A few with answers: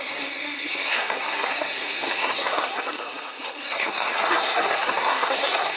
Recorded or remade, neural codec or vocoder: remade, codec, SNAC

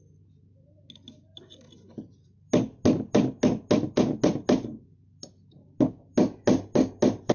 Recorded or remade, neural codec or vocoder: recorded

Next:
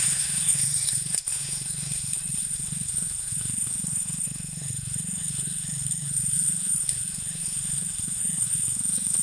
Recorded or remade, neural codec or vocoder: remade, codec, SNAC